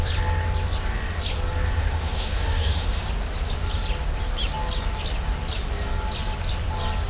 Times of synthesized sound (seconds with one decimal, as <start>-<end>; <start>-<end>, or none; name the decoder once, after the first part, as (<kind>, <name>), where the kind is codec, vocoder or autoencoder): 1.8-3.0 (autoencoder, DAC-VAE)